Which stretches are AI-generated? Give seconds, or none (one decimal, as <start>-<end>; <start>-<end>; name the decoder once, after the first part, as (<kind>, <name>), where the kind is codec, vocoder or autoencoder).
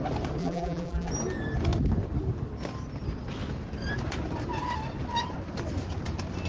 0.4-1.1 (vocoder, BigVGAN v2)